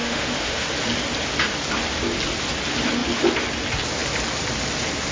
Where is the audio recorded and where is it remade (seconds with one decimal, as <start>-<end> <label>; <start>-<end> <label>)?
0.0-0.7 remade; 0.7-5.1 recorded